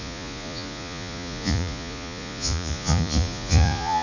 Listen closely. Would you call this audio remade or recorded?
remade